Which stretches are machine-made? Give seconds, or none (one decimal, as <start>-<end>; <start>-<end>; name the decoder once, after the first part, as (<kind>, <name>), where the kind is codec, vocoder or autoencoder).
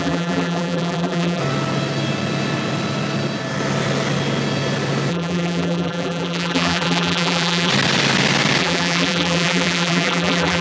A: 0.0-1.4 (vocoder, BigVGAN v2); 5.1-7.7; 8.6-10.6